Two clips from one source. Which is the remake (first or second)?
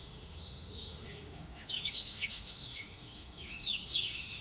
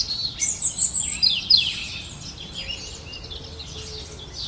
first